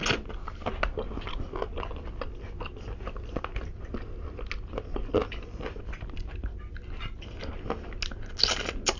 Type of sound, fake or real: real